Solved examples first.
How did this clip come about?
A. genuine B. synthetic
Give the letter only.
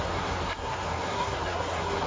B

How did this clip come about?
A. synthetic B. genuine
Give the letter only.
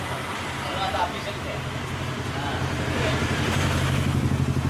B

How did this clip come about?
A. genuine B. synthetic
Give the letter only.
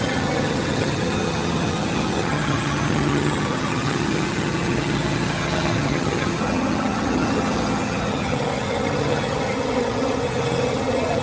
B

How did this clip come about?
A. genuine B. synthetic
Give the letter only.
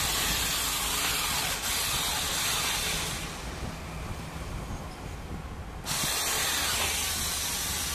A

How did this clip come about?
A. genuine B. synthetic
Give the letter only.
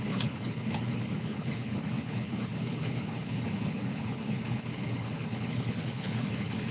B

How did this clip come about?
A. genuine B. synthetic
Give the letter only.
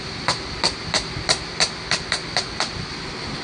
A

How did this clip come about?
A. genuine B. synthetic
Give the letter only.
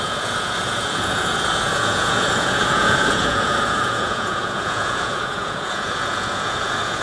B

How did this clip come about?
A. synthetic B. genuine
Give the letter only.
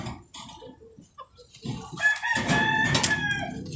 B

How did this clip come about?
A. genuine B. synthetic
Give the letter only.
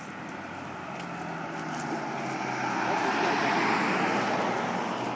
A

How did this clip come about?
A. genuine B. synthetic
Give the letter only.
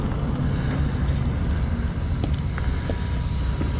A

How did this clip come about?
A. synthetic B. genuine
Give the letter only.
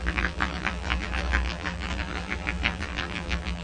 A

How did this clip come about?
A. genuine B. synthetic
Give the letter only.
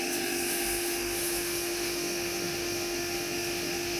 B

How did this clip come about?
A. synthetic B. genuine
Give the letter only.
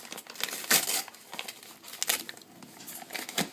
B